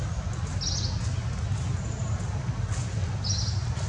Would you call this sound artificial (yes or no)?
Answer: no